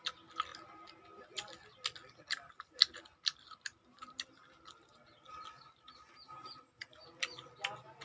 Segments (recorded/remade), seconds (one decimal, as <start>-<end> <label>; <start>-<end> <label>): 0.0-8.0 recorded